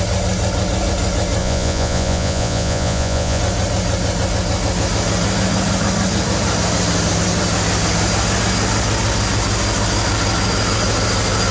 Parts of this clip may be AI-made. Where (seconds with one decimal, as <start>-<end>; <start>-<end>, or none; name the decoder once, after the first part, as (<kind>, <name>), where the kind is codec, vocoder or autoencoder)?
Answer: 1.4-3.4 (vocoder, Vocos)